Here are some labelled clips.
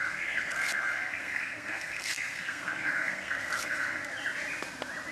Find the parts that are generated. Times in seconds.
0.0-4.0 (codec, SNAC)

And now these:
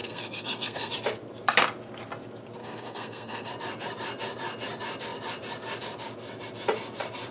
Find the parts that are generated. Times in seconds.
0.0-0.9 (codec, SNAC); 2.6-3.5

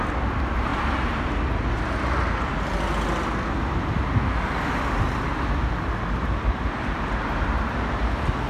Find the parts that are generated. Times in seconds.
none

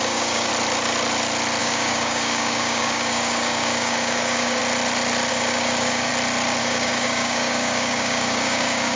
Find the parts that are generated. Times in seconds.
0.0-0.5 (codec, DAC); 1.6-4.6; 5.3-6.1; 6.6-9.0

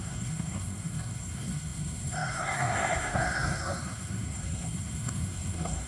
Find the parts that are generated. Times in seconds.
0.0-5.9 (codec, SNAC)

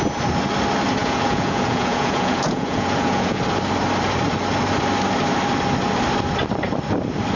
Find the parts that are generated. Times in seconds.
1.0-3.4 (vocoder, Vocos)